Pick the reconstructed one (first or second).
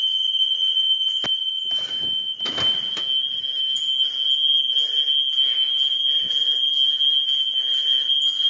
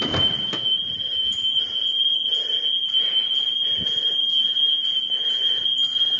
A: second